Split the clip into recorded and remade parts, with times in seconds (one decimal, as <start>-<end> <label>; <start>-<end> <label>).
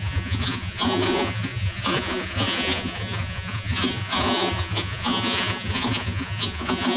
0.0-7.0 remade